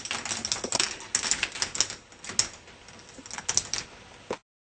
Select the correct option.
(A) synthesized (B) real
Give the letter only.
B